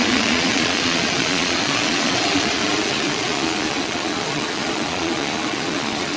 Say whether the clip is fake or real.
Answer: fake